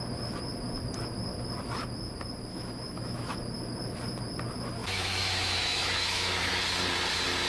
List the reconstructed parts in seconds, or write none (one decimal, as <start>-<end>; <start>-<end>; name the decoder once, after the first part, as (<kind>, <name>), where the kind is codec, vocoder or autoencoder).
2.5-3.4 (autoencoder, DAC-VAE); 4.8-6.5